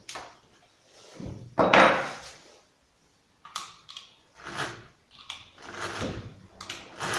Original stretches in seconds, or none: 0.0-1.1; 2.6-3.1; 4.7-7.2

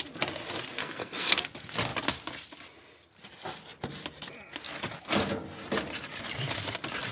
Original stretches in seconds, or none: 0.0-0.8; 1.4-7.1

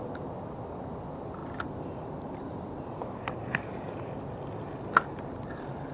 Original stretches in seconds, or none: 0.0-1.4; 4.9-5.9

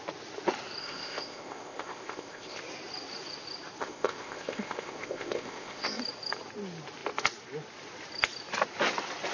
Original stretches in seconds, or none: 0.0-0.8; 2.6-3.8; 6.0-9.3

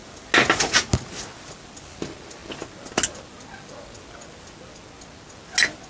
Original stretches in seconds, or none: 0.0-5.9